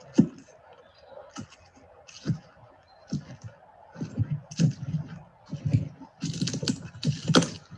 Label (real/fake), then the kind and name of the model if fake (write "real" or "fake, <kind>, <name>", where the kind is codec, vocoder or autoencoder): real